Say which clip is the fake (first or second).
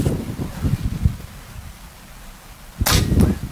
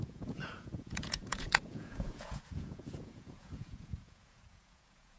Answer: second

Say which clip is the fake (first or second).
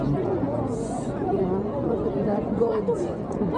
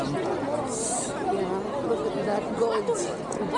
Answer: first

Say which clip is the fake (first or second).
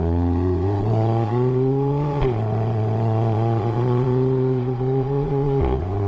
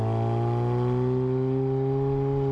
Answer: first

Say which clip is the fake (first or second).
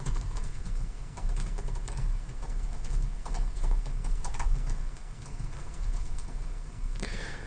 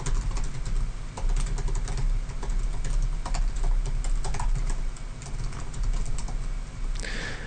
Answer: first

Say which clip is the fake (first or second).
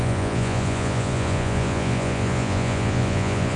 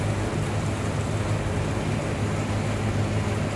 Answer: first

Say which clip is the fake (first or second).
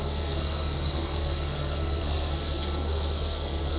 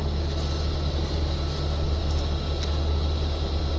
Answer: first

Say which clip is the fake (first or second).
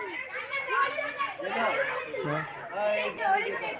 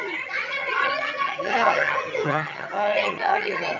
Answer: second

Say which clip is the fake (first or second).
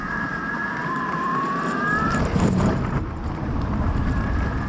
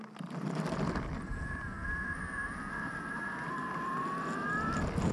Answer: first